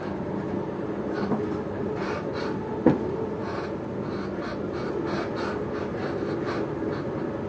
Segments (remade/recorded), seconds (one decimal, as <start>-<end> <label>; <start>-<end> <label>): 0.0-7.5 recorded